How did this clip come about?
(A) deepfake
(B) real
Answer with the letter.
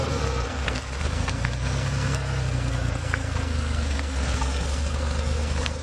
A